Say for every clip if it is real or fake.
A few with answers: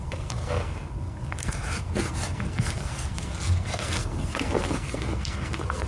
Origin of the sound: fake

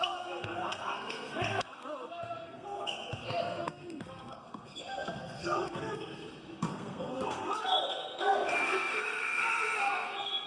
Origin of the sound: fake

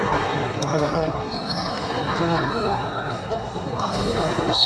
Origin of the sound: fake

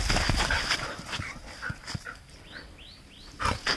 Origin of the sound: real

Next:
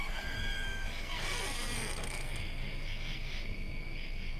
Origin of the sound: fake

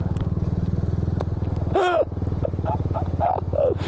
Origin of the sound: real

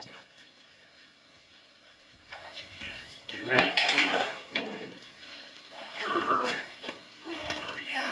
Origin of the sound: fake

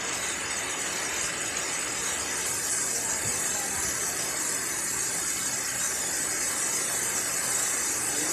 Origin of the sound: real